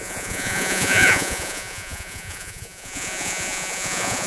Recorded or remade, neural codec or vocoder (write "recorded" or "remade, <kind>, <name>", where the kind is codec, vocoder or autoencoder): remade, vocoder, Vocos